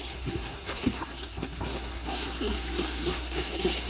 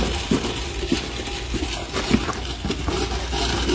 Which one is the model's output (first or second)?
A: first